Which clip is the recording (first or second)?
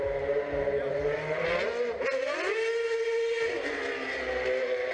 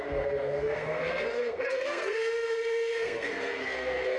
first